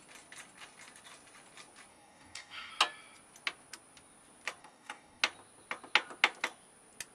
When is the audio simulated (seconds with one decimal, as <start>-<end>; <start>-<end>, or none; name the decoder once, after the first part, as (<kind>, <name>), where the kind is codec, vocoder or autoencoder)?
1.9-2.7 (codec, DAC); 4.6-5.2